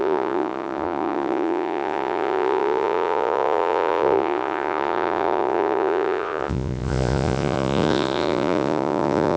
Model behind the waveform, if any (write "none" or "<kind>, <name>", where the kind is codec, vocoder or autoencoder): vocoder, Vocos